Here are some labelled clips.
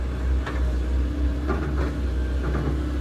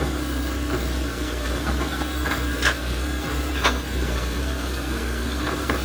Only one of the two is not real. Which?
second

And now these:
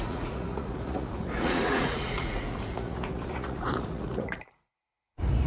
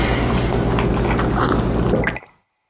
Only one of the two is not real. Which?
first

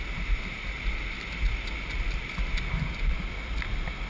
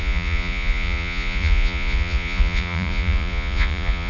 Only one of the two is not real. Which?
second